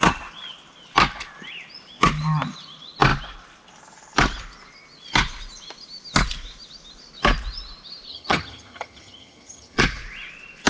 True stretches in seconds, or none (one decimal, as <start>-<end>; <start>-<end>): 0.0-8.1; 9.8-10.7